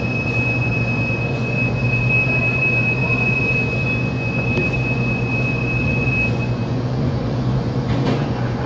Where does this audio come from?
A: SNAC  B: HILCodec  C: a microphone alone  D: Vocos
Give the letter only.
D